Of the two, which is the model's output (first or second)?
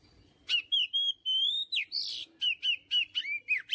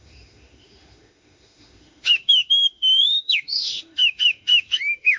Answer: second